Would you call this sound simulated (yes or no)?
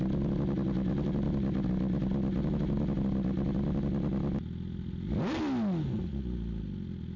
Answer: no